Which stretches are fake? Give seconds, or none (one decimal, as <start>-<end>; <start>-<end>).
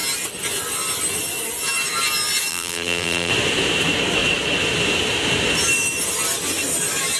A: 2.5-3.3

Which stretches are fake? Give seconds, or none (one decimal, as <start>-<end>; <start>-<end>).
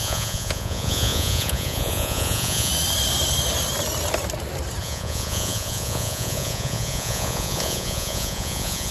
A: 0.0-2.7; 4.8-8.9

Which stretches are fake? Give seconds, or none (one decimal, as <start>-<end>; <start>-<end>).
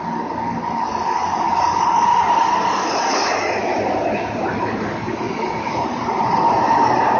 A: 0.0-2.1; 3.0-3.7; 4.6-5.9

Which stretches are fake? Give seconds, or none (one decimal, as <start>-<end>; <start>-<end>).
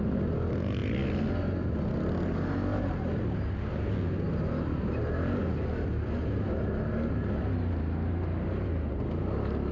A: none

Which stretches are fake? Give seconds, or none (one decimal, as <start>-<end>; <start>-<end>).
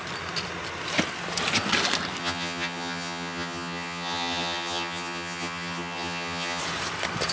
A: 2.2-6.6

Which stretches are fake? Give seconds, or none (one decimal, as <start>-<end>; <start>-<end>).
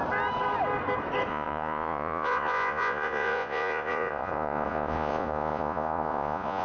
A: 1.3-6.6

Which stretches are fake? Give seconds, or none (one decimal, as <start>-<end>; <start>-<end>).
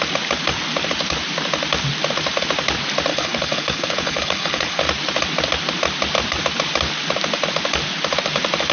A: 3.1-4.8